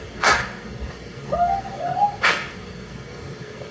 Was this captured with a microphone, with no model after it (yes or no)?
no